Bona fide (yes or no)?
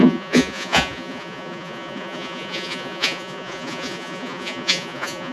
no